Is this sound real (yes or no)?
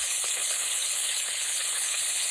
no